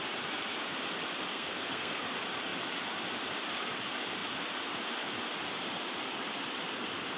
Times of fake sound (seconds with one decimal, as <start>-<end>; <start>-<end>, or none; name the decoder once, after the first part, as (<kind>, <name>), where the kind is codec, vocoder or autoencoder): 1.3-2.0 (codec, SNAC)